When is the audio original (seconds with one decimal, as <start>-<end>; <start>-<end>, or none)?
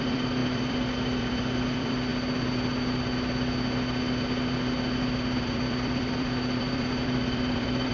2.1-5.4